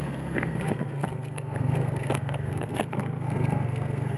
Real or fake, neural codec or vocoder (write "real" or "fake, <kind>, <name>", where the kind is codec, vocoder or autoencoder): fake, codec, SNAC